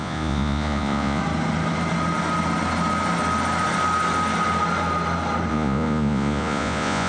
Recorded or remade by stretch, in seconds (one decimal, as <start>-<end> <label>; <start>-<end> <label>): 0.0-1.2 remade; 1.2-5.5 recorded; 5.5-7.1 remade